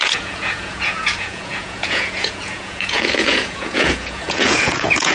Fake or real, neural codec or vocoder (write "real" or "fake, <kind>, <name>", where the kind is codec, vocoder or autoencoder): fake, vocoder, Vocos